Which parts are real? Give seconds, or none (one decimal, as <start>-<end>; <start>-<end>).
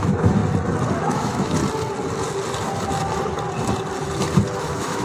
0.4-1.0; 1.6-4.6